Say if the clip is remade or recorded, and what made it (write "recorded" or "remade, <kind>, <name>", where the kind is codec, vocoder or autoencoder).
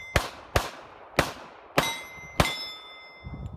recorded